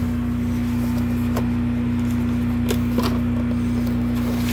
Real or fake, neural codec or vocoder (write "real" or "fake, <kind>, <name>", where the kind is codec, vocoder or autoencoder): real